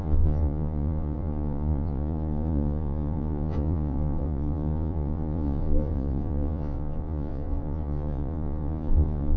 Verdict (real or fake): fake